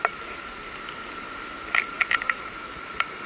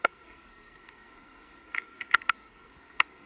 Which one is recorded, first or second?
first